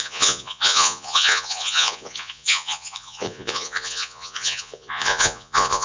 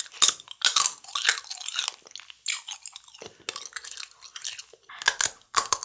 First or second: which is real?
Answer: second